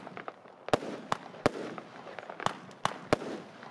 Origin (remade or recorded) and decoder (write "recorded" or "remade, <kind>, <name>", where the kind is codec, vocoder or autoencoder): recorded